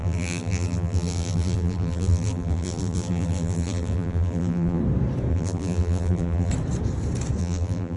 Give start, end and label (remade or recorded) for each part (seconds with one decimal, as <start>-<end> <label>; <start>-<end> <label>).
0.0-4.8 remade; 4.8-5.3 recorded; 5.3-6.5 remade; 6.5-7.4 recorded; 7.4-8.0 remade